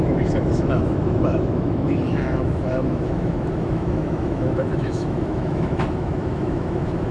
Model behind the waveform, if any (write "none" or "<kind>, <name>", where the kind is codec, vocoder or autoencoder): autoencoder, DAC-VAE